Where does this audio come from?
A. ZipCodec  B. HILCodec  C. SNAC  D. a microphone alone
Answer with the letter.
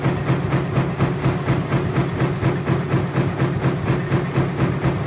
D